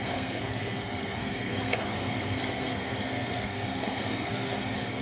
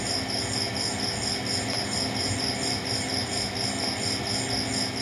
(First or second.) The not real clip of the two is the first